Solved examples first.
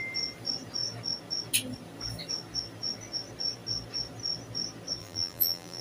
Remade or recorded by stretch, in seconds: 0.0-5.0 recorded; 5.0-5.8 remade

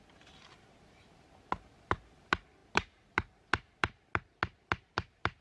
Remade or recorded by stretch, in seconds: 0.0-5.4 recorded

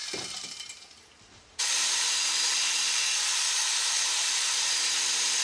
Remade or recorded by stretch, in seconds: 0.0-5.4 remade

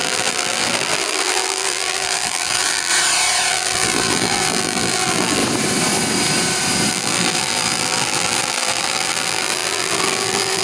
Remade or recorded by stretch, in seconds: 0.0-2.9 remade; 2.9-3.5 recorded; 3.5-5.4 remade; 5.4-6.9 recorded; 6.9-10.6 remade

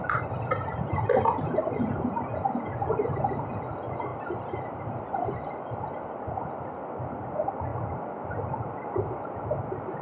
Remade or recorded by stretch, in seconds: 0.0-1.6 recorded; 1.6-2.3 remade; 2.3-4.1 recorded; 4.1-7.3 remade; 7.3-10.0 recorded